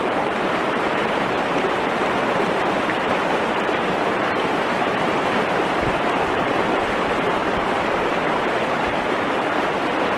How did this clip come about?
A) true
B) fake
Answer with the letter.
B